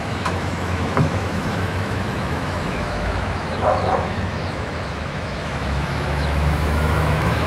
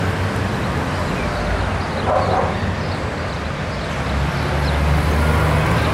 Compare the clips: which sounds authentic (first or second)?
second